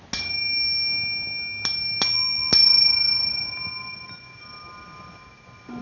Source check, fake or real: real